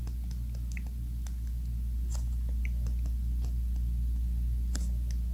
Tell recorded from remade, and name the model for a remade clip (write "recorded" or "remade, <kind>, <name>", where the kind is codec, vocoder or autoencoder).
recorded